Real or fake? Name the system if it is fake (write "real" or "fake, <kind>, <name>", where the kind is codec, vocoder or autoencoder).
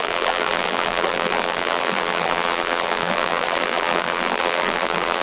fake, vocoder, BigVGAN v2